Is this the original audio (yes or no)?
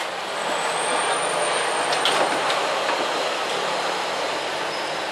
yes